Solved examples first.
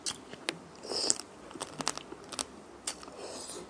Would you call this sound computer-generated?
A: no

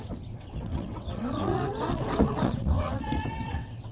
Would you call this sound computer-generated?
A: yes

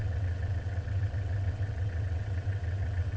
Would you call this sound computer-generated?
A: yes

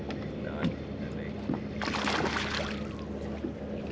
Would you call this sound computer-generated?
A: no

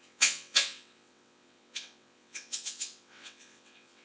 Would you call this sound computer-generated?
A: yes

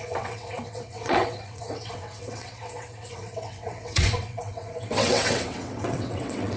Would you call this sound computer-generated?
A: yes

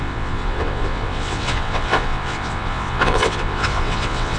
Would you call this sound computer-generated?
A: yes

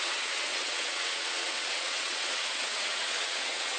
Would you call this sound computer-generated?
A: yes